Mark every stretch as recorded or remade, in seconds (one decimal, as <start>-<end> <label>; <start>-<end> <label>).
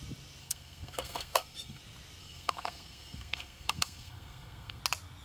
0.0-0.4 recorded; 0.4-1.8 remade; 1.8-2.2 recorded; 2.2-4.8 remade; 4.8-5.2 recorded